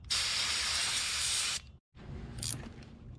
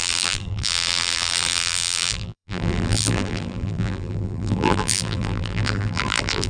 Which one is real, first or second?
first